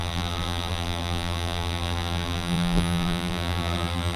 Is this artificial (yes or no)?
yes